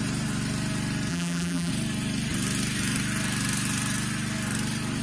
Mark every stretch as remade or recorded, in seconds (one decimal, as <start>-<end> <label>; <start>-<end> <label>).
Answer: 0.0-1.1 recorded; 1.1-1.7 remade; 1.7-5.0 recorded